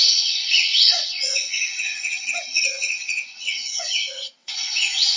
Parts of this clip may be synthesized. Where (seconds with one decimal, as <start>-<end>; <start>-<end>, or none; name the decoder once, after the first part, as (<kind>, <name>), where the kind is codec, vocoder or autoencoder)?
0.0-5.2 (vocoder, WaveNeXt)